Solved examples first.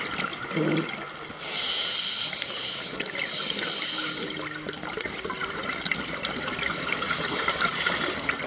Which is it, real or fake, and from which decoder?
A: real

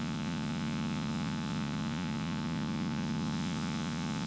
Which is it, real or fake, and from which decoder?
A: fake, vocoder, Vocos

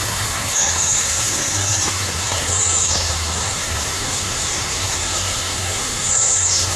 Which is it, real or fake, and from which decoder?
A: fake, codec, SNAC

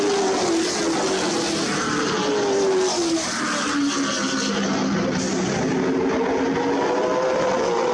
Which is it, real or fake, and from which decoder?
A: real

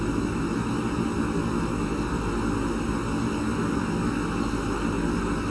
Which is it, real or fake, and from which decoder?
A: real